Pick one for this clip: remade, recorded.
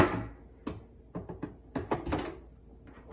recorded